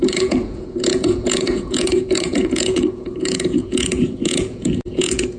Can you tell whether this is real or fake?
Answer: fake